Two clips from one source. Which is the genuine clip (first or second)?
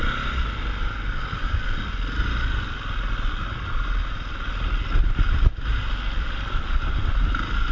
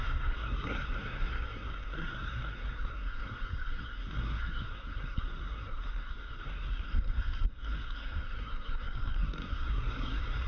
first